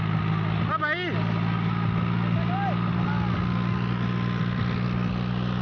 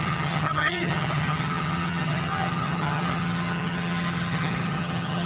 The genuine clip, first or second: first